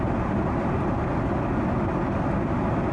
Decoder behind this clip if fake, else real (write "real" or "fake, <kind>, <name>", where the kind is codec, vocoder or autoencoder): real